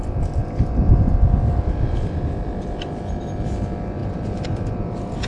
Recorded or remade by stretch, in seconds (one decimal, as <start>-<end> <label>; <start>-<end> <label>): 0.0-0.4 recorded; 0.4-0.9 remade; 0.9-4.0 recorded; 4.0-5.3 remade